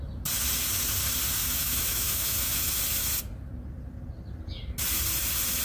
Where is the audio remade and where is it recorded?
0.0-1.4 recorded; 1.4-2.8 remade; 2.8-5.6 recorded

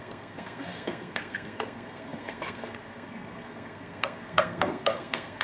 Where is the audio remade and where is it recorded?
0.0-5.4 remade

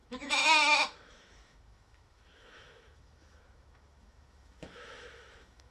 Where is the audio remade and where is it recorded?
0.0-5.7 remade

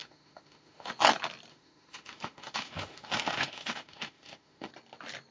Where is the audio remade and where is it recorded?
0.0-0.9 remade; 0.9-1.5 recorded; 1.5-4.7 remade; 4.7-5.3 recorded

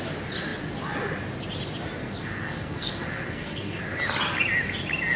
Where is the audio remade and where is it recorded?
0.0-2.0 recorded; 2.0-3.8 remade; 3.8-5.2 recorded

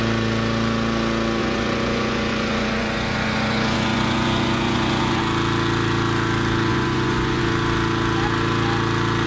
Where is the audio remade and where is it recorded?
0.0-1.4 recorded; 1.4-5.2 remade; 5.2-6.7 recorded; 6.7-7.4 remade; 7.4-9.3 recorded

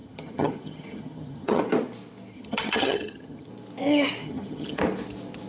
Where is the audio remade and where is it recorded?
0.0-1.6 remade; 1.6-2.3 recorded; 2.3-3.5 remade; 3.5-4.2 recorded; 4.2-4.8 remade; 4.8-5.5 recorded

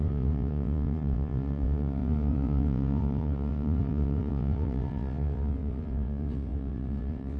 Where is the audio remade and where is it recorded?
0.0-7.4 remade